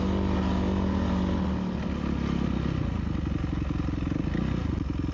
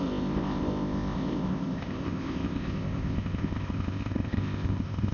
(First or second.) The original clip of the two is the first